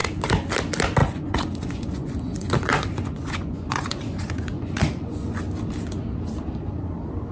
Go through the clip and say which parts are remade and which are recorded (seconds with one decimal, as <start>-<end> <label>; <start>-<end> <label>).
0.0-1.0 recorded; 1.0-5.4 remade; 5.4-7.3 recorded

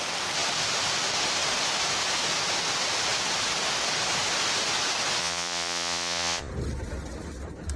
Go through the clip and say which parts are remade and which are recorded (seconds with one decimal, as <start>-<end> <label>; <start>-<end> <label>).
0.0-5.2 recorded; 5.2-6.5 remade; 6.5-7.8 recorded

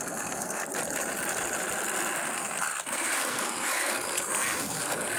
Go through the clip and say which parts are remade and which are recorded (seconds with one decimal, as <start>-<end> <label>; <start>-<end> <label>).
0.0-0.7 remade; 0.7-2.3 recorded; 2.3-5.2 remade

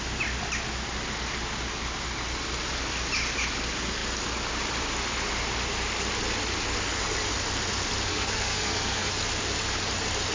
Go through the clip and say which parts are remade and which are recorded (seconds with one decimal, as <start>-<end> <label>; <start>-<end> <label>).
0.0-8.1 recorded; 8.1-9.1 remade; 9.1-10.3 recorded